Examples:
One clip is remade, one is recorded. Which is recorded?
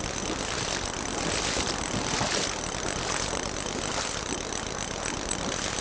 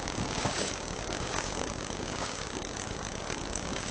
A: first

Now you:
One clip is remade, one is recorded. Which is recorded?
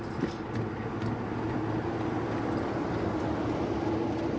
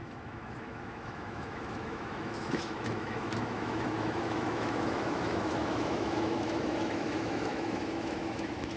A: first